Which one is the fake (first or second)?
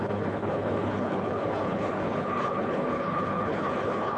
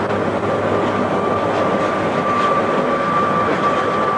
first